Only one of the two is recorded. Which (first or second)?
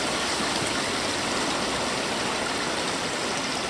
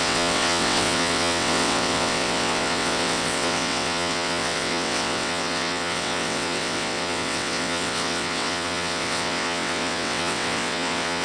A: first